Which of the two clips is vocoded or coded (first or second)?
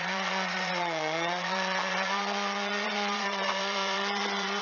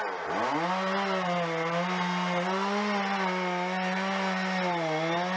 first